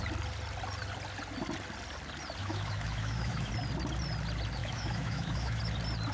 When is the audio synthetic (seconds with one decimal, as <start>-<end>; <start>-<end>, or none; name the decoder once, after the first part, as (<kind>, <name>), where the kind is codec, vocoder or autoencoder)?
2.4-3.5 (autoencoder, DAC-VAE); 4.6-5.6